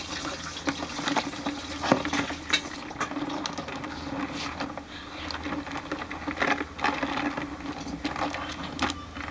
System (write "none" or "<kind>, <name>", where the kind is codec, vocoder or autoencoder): none